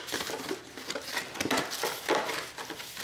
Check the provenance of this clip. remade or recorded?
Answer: recorded